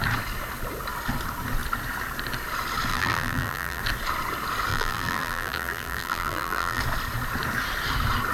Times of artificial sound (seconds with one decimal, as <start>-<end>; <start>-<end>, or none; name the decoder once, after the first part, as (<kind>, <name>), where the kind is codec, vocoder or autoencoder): 2.9-3.8 (vocoder, BigVGAN v2); 4.7-6.8